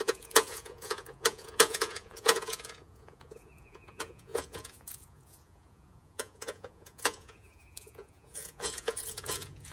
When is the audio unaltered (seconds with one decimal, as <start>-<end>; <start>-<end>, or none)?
none